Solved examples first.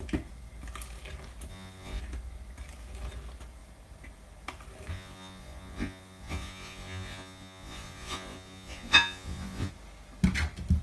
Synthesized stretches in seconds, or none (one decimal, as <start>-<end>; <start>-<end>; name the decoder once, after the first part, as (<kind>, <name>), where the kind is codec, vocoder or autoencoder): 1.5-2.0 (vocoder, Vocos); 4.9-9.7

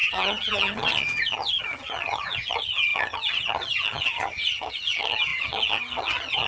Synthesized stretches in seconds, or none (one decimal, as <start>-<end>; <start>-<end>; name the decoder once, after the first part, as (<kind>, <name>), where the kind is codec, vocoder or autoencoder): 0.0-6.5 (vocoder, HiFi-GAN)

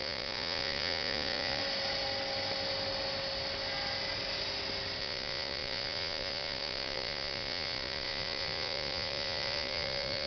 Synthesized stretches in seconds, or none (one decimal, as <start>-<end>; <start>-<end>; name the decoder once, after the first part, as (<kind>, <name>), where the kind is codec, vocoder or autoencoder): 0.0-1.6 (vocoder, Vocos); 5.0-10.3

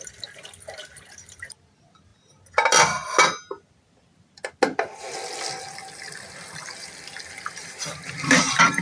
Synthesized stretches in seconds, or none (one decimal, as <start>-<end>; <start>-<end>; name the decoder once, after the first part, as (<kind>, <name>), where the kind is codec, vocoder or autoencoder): none

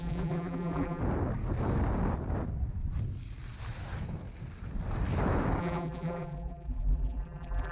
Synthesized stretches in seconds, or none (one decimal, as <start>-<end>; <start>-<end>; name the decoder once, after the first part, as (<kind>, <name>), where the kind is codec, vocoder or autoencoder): 0.0-1.0 (vocoder, BigVGAN v2); 5.6-7.7

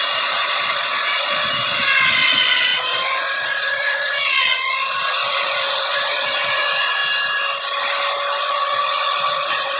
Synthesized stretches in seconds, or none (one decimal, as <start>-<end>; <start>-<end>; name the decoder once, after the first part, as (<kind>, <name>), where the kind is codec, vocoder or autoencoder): 0.0-7.0 (vocoder, Vocos); 8.4-9.8

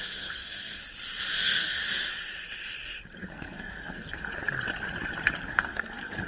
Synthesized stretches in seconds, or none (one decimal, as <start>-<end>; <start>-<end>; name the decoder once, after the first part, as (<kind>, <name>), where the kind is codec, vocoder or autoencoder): 0.0-0.8 (codec, SNAC); 1.3-1.8; 3.3-4.3; 5.5-6.3